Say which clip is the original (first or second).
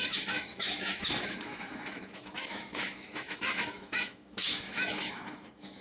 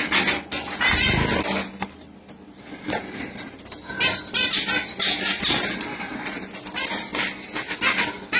second